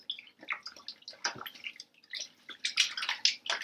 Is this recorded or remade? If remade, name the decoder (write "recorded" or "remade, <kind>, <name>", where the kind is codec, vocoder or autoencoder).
recorded